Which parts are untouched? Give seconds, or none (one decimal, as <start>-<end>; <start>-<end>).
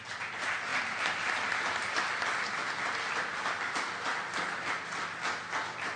0.0-6.0